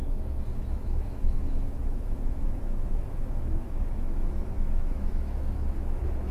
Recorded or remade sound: remade